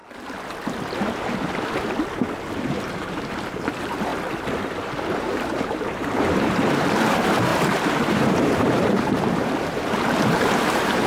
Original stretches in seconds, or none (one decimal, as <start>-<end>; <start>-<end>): 0.0-2.7; 4.1-5.1